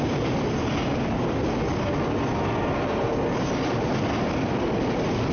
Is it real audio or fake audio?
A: real